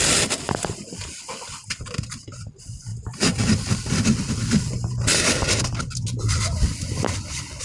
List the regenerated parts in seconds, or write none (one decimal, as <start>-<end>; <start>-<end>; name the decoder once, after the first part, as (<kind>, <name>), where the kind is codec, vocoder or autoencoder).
none